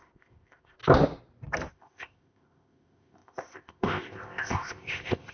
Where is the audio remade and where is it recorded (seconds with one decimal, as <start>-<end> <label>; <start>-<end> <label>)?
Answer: 0.0-0.8 remade; 0.8-1.7 recorded; 1.7-5.3 remade